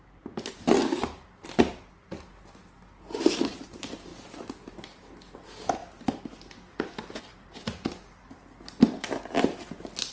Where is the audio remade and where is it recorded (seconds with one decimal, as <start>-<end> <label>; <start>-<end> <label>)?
0.0-10.1 recorded